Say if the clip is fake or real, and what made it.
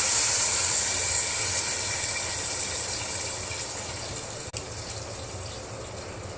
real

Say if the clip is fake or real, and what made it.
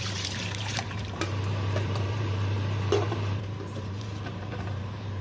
fake, vocoder, BigVGAN v2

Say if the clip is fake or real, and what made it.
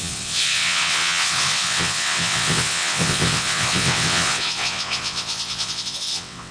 fake, vocoder, WaveNeXt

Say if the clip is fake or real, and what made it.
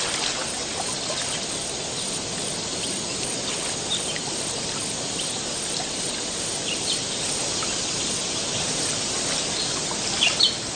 real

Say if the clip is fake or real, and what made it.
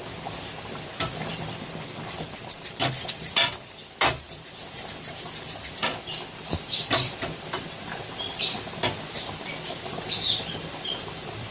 fake, vocoder, BigVGAN v2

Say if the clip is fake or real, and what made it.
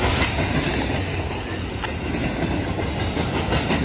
real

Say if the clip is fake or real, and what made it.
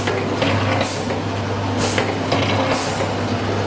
real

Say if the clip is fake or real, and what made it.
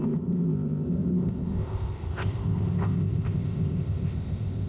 fake, codec, ZipCodec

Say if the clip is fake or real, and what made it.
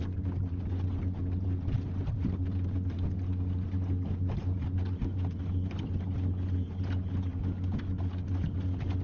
real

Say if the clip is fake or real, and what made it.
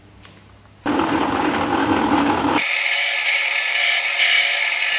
real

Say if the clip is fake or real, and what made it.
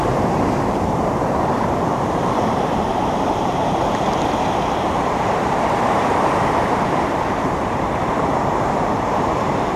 fake, vocoder, BigVGAN v2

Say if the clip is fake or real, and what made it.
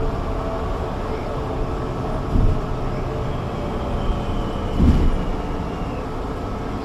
real